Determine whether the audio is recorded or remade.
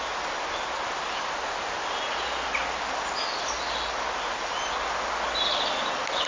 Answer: recorded